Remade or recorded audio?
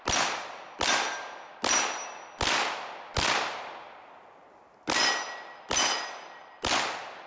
recorded